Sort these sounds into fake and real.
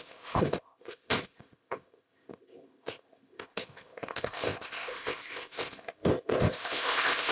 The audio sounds fake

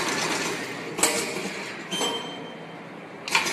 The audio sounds real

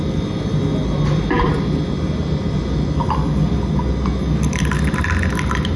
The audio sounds real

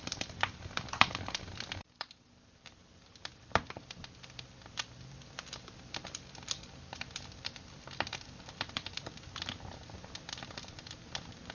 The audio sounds fake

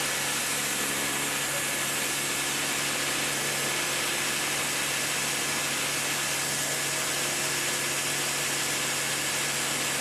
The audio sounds real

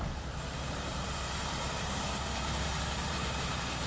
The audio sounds fake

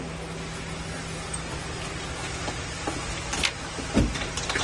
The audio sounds real